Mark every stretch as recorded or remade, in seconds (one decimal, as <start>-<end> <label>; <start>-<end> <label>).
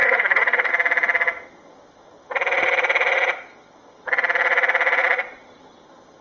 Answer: 0.0-0.7 remade; 0.7-6.2 recorded